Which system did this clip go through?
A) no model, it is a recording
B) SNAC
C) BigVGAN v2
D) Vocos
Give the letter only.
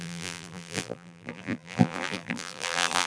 C